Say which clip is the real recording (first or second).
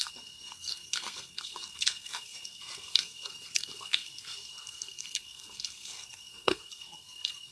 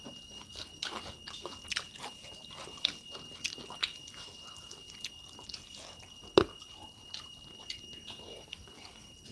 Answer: second